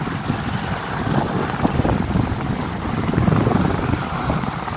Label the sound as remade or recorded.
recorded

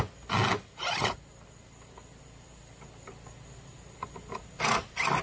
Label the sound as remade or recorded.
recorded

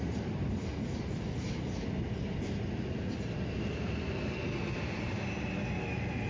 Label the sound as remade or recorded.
recorded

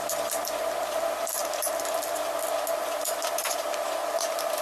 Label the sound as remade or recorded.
recorded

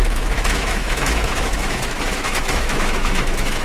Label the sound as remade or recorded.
remade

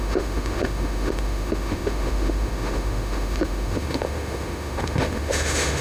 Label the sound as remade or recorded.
remade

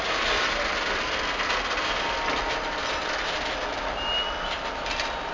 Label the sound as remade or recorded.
recorded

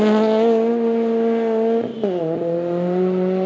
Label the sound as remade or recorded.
recorded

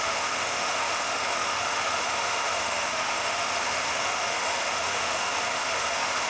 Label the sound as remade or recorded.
remade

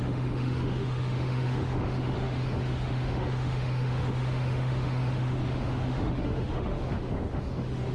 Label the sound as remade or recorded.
remade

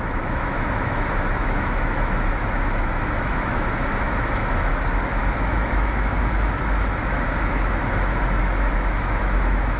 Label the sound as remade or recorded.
remade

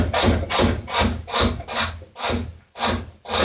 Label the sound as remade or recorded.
recorded